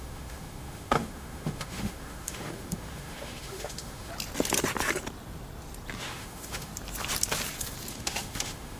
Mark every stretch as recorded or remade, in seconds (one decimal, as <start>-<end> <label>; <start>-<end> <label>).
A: 0.0-4.1 remade; 4.1-6.0 recorded; 6.0-6.7 remade; 6.7-7.9 recorded; 7.9-8.8 remade